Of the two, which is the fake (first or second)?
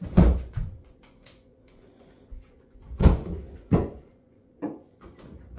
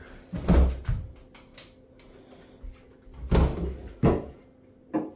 first